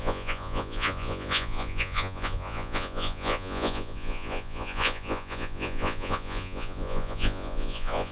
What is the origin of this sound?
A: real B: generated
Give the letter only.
B